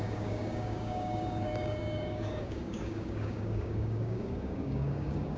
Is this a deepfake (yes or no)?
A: yes